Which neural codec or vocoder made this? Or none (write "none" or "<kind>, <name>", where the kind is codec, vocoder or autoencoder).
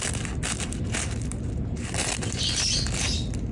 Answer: none